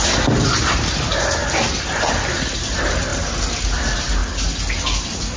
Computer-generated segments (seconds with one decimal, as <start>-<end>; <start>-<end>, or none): none